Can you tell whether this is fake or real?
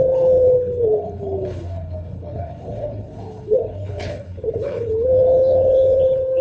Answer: fake